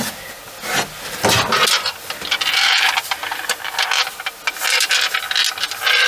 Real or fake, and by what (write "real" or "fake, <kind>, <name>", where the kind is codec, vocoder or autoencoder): real